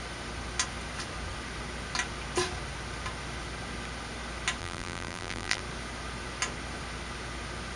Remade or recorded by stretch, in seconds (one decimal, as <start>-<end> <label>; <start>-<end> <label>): 0.0-4.6 recorded; 4.6-5.6 remade; 5.6-7.8 recorded